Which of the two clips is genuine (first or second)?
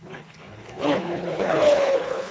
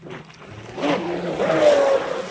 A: second